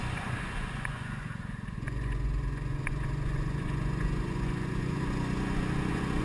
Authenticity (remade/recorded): remade